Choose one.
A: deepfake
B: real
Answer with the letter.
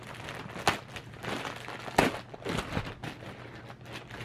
B